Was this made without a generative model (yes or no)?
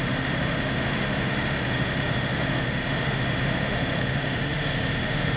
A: no